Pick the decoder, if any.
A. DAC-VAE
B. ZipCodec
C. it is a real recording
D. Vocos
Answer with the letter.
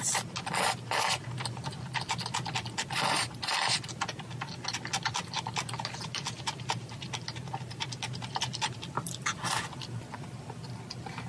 C